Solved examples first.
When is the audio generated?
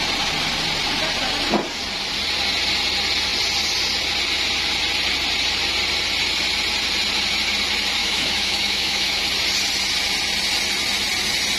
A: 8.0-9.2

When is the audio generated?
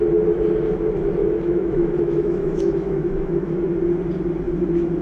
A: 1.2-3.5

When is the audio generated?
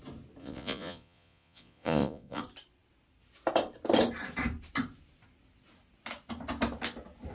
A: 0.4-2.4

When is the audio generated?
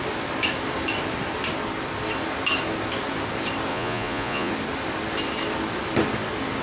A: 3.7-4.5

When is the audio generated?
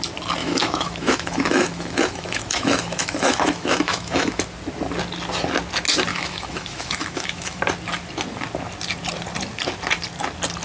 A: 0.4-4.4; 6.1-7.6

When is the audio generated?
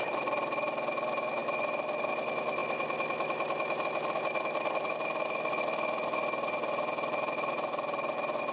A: none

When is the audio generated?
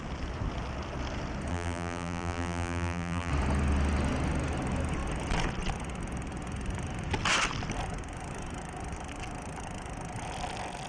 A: 1.5-3.3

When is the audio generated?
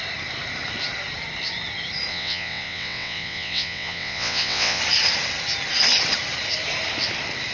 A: 2.1-4.8